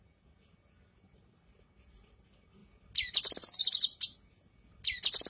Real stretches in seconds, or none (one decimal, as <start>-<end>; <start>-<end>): 0.0-5.3